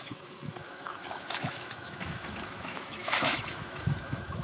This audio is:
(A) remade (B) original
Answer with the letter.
A